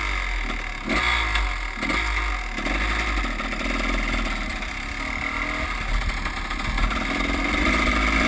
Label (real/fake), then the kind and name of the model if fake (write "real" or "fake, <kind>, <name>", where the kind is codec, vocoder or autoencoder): real